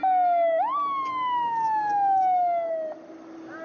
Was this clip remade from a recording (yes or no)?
no